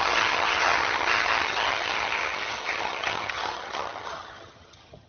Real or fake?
fake